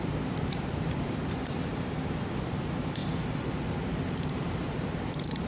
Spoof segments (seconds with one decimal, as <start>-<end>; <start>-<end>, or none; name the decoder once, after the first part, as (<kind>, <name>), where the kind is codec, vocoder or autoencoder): 0.0-1.7 (vocoder, BigVGAN v2); 2.5-3.0; 3.5-5.5